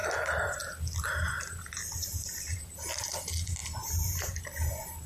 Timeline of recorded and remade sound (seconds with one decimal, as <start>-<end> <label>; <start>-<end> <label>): 0.0-5.1 recorded

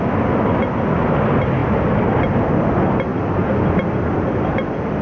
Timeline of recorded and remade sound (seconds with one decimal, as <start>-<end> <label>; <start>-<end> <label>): 0.0-5.0 recorded

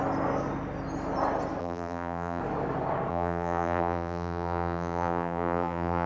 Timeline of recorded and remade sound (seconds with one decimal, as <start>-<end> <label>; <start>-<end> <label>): 0.0-1.6 recorded; 1.6-2.4 remade; 2.4-3.1 recorded; 3.1-6.1 remade

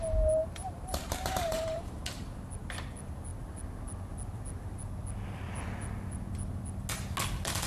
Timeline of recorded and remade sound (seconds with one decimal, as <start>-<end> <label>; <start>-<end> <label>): 0.0-0.4 recorded; 0.4-1.8 remade; 1.8-7.7 recorded